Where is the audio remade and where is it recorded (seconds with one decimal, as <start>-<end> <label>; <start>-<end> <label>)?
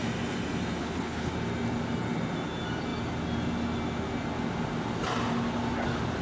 0.0-0.8 recorded; 0.8-1.3 remade; 1.3-6.2 recorded